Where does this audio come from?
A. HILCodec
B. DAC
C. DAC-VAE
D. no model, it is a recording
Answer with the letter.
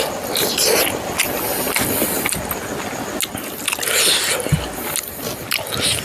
D